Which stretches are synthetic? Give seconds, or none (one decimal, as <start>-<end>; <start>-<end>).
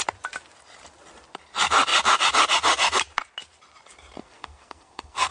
4.2-5.3